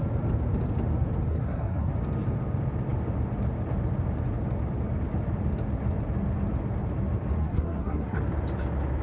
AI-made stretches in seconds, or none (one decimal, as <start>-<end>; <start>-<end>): 1.3-1.9; 7.4-8.2